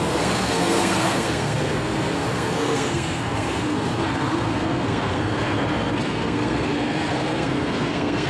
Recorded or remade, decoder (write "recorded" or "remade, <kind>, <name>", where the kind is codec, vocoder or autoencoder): remade, codec, SNAC